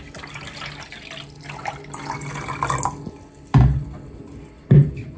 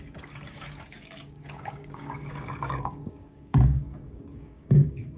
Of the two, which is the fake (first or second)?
second